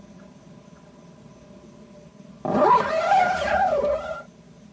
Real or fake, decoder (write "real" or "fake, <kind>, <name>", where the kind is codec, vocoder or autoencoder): real